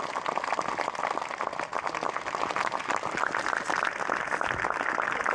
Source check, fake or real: real